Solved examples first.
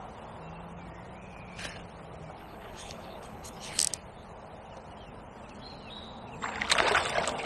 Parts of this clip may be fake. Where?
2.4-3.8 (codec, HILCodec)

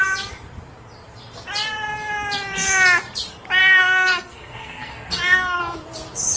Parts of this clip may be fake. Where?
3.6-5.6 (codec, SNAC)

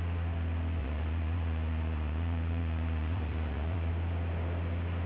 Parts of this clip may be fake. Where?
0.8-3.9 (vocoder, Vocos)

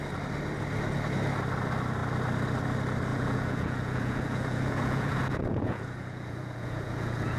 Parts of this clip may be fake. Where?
3.1-7.4 (vocoder, Vocos)

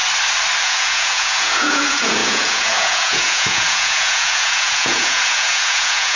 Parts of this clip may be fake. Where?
0.6-6.2 (vocoder, Vocos)